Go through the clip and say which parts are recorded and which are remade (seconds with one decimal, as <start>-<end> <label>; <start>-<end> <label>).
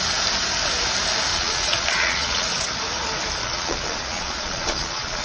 0.0-1.3 recorded; 1.3-2.7 remade; 2.7-3.4 recorded; 3.4-5.2 remade